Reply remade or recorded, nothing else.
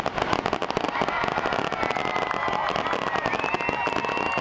recorded